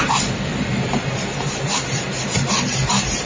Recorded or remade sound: remade